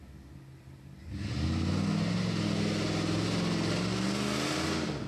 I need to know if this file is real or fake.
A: real